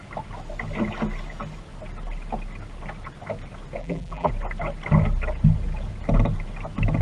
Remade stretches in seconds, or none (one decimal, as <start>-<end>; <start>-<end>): 3.8-4.3